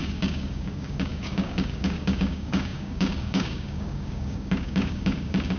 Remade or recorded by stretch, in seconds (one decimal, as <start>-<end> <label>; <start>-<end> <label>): 0.0-5.6 remade